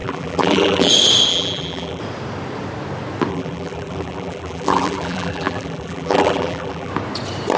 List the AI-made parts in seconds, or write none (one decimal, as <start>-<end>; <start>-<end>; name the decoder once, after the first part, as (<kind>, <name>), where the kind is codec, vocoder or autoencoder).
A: 0.0-0.9 (vocoder, BigVGAN v2); 1.3-2.0; 3.3-6.9